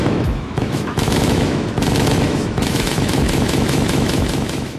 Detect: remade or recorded remade